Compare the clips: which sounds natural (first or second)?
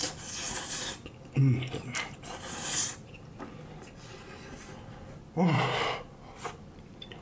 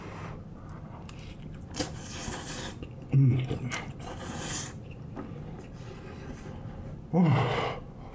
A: first